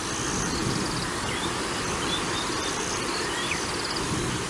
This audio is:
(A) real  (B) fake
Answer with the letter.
A